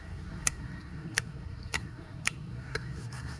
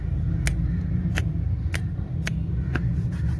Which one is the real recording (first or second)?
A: second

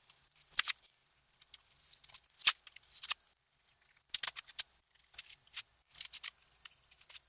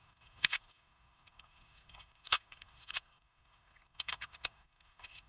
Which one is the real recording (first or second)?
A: first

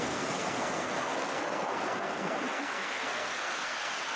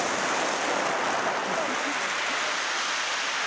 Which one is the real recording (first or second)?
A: second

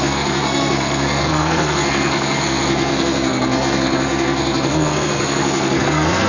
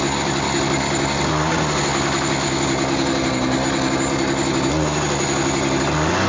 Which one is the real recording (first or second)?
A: second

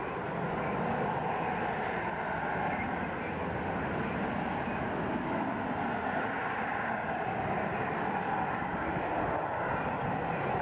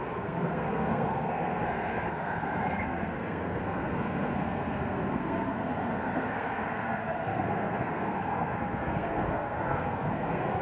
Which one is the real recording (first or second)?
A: first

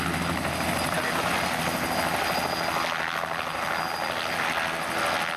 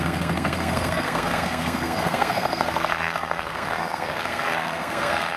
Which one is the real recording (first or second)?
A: first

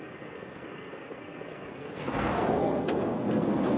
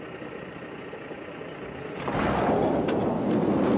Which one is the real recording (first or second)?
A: second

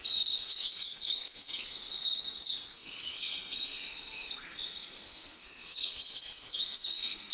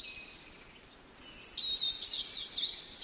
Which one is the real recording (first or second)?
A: second